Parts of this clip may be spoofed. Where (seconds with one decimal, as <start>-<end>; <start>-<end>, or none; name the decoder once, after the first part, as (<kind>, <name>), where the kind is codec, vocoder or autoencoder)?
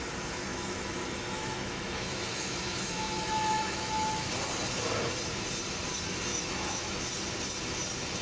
0.5-4.3 (autoencoder, DAC-VAE); 6.3-6.9